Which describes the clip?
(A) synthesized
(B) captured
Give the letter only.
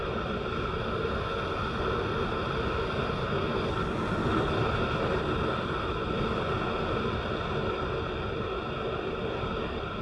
B